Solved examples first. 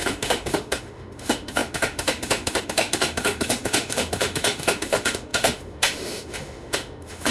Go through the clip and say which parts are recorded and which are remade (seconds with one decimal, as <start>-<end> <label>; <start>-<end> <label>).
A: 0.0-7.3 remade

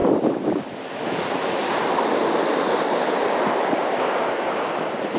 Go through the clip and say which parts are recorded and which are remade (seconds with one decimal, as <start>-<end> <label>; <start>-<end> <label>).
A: 0.0-5.2 recorded

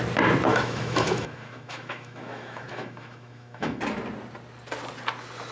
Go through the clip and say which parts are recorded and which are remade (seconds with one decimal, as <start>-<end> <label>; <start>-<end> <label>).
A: 0.0-0.5 recorded; 0.5-3.8 remade; 3.8-5.5 recorded

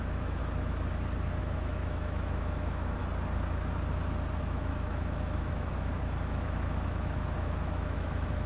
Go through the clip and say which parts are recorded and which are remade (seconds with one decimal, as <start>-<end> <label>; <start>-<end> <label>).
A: 0.0-0.4 remade; 0.4-1.4 recorded; 1.4-3.0 remade; 3.0-4.4 recorded; 4.4-8.5 remade

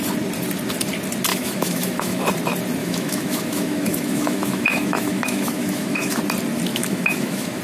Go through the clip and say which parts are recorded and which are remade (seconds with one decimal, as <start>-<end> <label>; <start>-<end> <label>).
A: 0.0-1.3 recorded; 1.3-2.2 remade; 2.2-2.8 recorded; 2.8-6.2 remade; 6.2-6.7 recorded; 6.7-7.6 remade

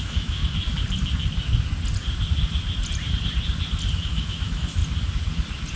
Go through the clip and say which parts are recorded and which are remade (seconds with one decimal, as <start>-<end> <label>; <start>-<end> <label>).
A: 0.0-0.4 remade; 0.4-3.9 recorded; 3.9-4.8 remade; 4.8-5.8 recorded

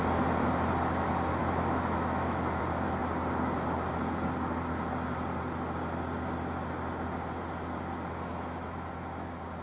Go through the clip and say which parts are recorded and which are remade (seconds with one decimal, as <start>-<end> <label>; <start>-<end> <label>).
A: 0.0-1.4 recorded; 1.4-2.6 remade; 2.6-9.6 recorded